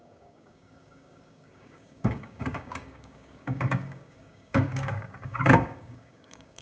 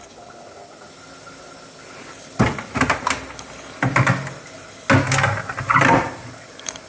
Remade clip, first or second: first